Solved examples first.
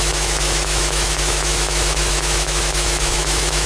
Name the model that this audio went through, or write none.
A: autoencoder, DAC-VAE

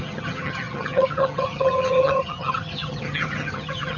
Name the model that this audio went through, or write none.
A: vocoder, HiFi-GAN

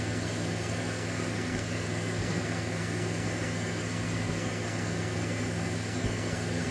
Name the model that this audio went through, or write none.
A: codec, SNAC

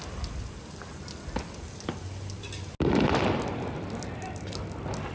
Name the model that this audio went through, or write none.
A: none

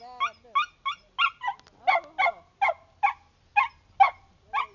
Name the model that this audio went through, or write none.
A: none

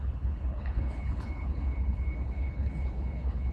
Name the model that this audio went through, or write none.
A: codec, HILCodec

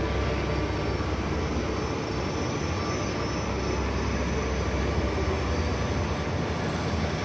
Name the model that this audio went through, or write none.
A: none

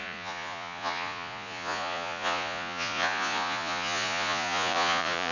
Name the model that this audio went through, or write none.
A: vocoder, Vocos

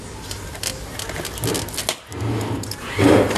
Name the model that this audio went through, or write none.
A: none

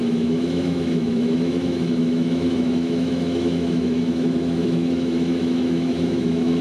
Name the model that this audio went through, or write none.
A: autoencoder, DAC-VAE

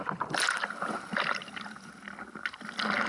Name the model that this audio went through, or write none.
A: none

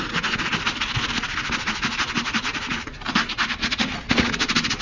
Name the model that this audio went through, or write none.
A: none